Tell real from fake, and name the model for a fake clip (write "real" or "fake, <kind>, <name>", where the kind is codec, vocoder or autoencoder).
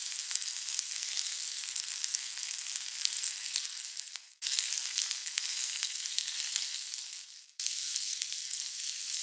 fake, codec, SNAC